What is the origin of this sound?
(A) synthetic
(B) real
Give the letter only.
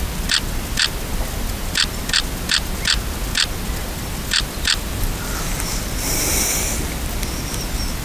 B